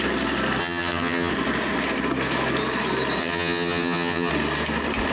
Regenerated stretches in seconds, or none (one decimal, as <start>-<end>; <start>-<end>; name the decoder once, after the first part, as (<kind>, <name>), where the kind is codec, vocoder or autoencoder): 0.6-1.3 (vocoder, HiFi-GAN); 3.2-4.3